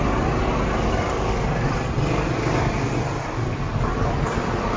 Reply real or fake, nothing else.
real